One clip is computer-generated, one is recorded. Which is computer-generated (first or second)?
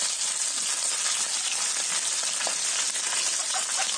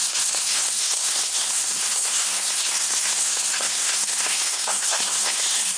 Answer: second